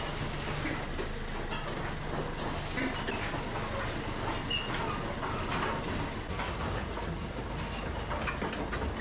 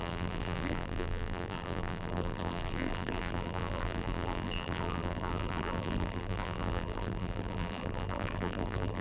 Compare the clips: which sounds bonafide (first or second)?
first